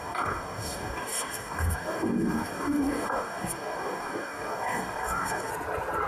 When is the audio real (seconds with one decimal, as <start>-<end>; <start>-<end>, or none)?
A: 5.5-6.1